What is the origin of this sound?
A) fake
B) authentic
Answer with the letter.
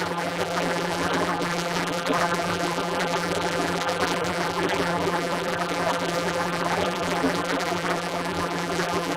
A